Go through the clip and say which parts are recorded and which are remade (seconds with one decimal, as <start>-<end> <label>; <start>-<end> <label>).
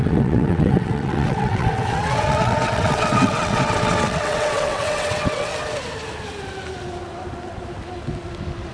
0.0-5.5 remade; 5.5-8.7 recorded